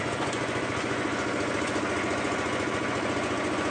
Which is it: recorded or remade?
remade